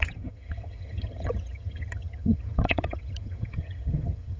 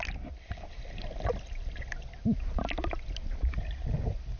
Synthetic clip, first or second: first